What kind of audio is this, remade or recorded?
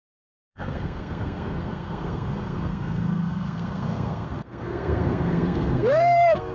remade